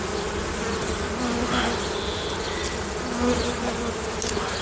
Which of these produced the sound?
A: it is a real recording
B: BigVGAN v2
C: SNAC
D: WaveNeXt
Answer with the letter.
A